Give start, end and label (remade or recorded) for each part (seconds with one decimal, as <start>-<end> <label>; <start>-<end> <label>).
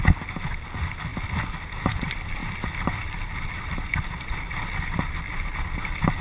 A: 0.0-6.2 recorded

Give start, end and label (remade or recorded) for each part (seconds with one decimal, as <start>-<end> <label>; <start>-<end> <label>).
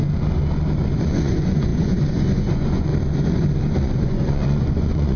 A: 0.0-1.0 recorded; 1.0-2.9 remade; 2.9-3.8 recorded; 3.8-5.2 remade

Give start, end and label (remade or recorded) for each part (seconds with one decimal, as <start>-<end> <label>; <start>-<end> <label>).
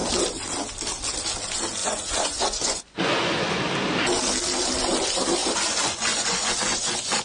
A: 0.0-1.8 recorded; 1.8-3.6 remade; 3.6-5.4 recorded; 5.4-7.2 remade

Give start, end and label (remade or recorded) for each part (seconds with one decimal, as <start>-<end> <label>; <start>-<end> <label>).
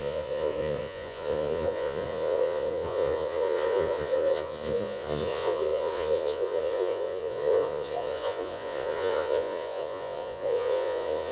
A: 0.0-11.3 remade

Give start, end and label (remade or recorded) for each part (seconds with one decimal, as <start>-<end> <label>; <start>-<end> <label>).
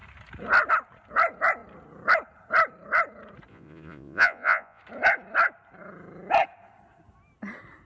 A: 0.0-3.5 recorded; 3.5-4.8 remade; 4.8-7.9 recorded